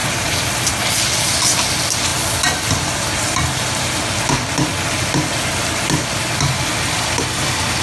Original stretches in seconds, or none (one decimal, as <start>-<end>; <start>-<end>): 0.8-7.8